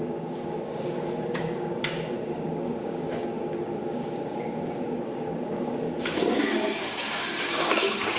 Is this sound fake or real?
fake